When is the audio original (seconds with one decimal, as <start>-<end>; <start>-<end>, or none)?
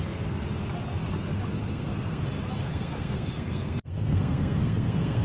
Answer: 0.0-1.6; 2.2-2.6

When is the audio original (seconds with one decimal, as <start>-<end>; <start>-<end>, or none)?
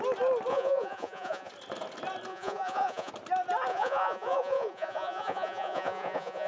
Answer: 0.0-0.5; 1.5-2.3; 3.1-3.7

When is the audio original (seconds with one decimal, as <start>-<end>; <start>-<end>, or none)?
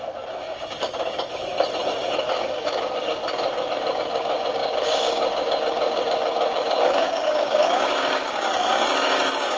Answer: 1.5-2.3; 3.2-3.9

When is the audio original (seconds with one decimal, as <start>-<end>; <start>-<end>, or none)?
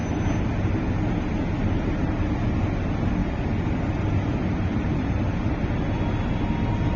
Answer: 0.0-7.0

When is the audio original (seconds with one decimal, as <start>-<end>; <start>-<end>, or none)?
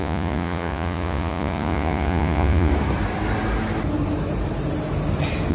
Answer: 2.7-5.5